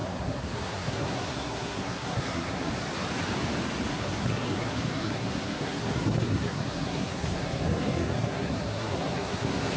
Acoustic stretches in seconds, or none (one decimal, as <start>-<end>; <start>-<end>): 2.7-3.9